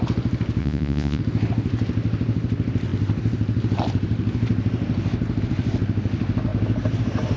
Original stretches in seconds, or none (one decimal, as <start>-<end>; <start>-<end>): 0.0-0.6; 1.2-7.4